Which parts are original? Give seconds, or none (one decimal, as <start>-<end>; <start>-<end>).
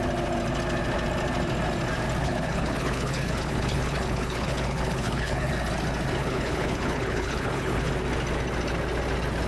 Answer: 0.0-2.2; 5.5-6.2; 7.9-9.5